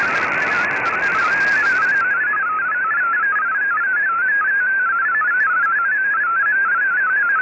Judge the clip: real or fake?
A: real